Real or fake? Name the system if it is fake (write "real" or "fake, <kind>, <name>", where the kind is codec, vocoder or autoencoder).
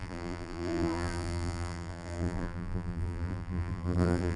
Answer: fake, vocoder, BigVGAN v2